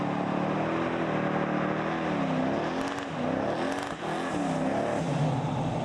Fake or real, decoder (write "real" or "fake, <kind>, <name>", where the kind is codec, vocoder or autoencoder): real